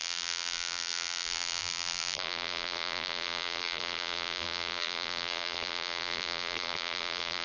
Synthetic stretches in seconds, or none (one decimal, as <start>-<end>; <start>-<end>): 0.0-7.4